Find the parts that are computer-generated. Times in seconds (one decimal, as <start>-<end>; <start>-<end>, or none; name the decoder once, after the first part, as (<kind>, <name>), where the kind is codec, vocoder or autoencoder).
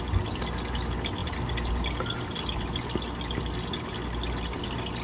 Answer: none